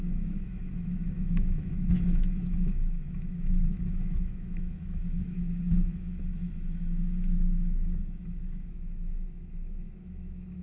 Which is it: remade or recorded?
remade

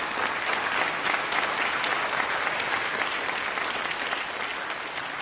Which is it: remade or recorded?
recorded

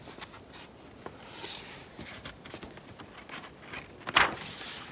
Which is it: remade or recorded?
recorded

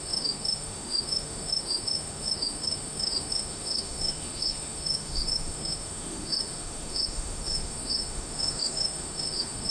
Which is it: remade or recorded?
remade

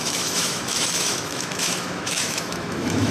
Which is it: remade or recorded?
remade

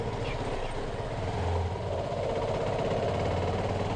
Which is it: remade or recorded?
recorded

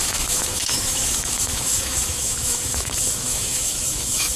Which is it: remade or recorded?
remade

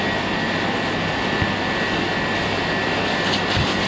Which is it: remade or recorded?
recorded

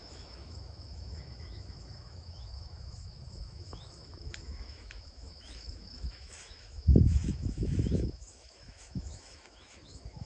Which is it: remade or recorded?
remade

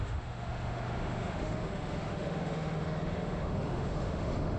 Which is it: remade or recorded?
remade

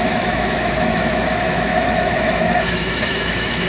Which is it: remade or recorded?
remade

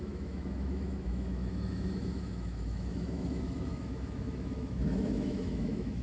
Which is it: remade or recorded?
remade